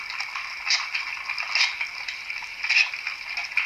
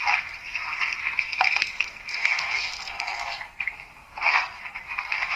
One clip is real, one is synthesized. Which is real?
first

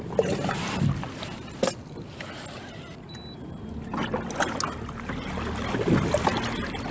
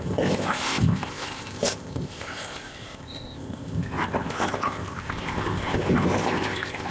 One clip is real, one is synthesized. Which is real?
first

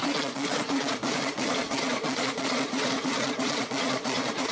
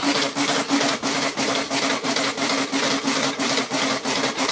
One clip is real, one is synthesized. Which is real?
second